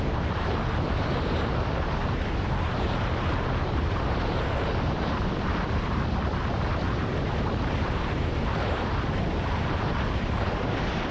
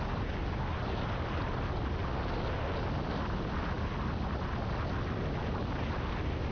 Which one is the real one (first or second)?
second